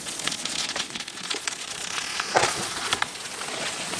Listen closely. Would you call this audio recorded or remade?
remade